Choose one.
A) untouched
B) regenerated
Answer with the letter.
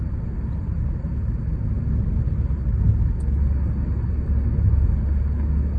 A